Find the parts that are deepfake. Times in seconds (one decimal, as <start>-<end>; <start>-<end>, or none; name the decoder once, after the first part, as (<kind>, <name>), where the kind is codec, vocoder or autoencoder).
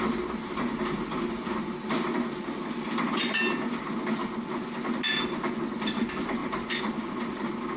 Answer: none